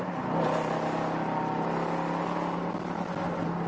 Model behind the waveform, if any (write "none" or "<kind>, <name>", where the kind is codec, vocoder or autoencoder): none